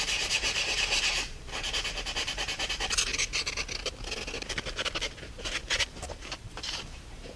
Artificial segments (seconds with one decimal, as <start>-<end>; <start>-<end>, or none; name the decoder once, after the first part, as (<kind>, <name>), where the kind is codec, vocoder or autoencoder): 0.0-3.1 (vocoder, BigVGAN v2); 5.2-7.4